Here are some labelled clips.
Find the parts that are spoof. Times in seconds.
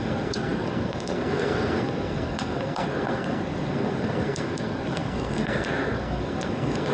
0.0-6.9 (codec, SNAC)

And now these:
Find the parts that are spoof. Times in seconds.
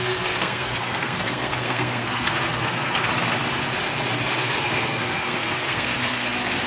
0.0-3.1 (codec, SNAC); 4.4-6.7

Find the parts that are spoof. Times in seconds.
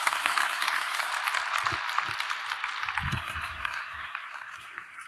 0.0-1.1 (codec, SNAC); 3.1-5.1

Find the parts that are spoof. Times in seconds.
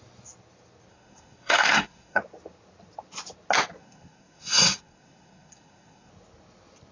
0.9-2.2 (codec, SNAC); 3.8-6.1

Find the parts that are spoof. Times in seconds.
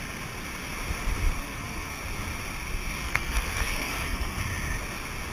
1.4-2.0 (codec, SNAC); 3.0-4.4